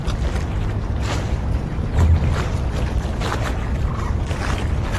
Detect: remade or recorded recorded